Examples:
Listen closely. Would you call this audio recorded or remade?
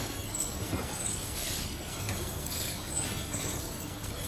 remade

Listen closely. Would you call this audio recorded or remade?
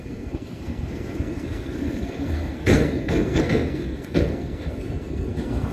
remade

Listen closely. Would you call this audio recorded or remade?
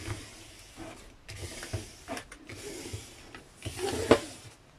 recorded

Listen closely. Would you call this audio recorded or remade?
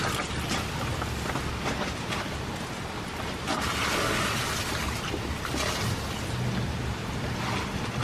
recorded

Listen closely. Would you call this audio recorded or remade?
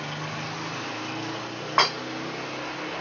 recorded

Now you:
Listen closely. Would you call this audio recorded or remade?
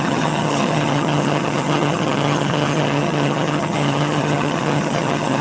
remade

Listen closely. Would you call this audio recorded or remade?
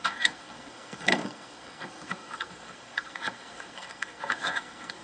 remade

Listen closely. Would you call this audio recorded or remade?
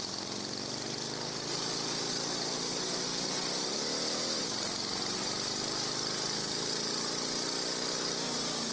recorded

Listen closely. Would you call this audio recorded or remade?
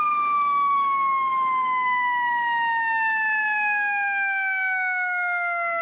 remade